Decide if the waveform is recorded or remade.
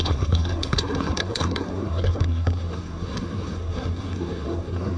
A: remade